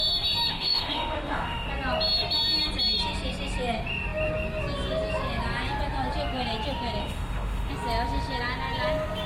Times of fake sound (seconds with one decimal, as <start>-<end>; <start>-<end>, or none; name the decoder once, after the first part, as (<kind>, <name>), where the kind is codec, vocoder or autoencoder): 0.5-1.7 (autoencoder, DAC-VAE); 7.0-7.7